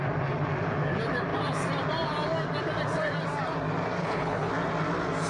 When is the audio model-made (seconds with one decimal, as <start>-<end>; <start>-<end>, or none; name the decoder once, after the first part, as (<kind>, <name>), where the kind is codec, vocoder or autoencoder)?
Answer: 4.0-4.5 (codec, HILCodec)